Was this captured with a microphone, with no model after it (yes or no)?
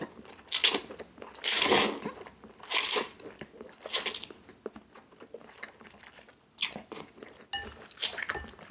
yes